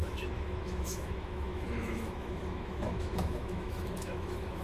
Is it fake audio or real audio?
fake